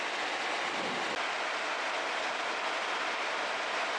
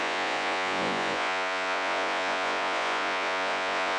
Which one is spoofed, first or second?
second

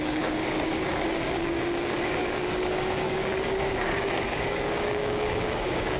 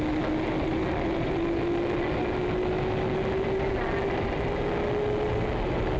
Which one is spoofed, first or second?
first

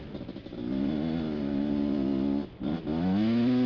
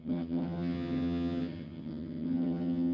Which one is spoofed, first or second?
second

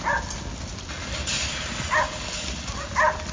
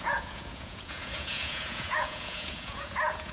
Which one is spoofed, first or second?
second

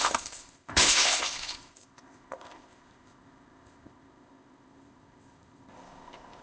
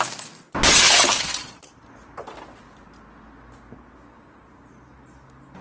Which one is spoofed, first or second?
first